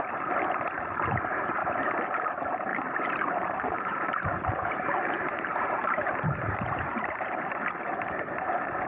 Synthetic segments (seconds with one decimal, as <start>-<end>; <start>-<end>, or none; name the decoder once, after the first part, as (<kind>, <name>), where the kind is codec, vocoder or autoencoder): 1.6-2.2 (vocoder, BigVGAN v2); 2.7-7.4